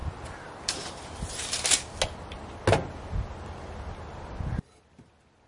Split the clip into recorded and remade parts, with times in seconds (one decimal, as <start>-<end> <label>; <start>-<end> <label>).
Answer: 0.0-5.5 recorded